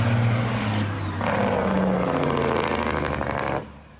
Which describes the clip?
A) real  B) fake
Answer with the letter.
A